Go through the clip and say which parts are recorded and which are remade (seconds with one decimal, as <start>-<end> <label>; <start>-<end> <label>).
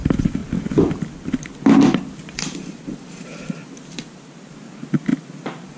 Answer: 0.0-5.8 recorded